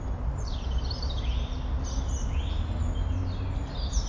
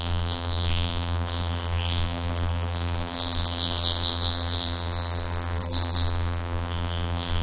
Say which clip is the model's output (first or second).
second